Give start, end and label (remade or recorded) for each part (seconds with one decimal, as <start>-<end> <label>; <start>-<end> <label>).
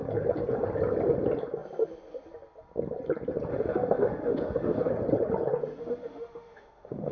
0.0-3.5 recorded; 3.5-4.9 remade; 4.9-5.8 recorded; 5.8-7.1 remade